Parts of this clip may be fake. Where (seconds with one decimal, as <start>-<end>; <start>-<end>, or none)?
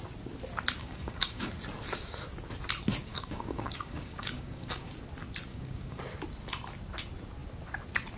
0.8-1.5; 3.1-4.9; 5.5-6.0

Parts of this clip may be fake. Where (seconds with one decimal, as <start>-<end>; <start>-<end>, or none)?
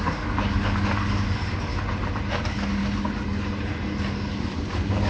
0.0-1.7; 2.4-2.8; 4.4-5.1